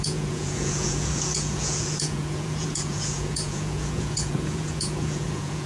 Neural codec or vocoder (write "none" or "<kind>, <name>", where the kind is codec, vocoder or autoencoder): vocoder, Vocos